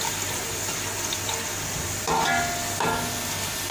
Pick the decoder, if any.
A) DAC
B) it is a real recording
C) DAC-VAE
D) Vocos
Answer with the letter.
B